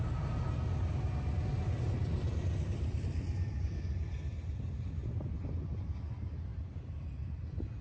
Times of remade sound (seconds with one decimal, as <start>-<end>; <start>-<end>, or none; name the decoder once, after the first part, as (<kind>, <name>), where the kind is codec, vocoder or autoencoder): none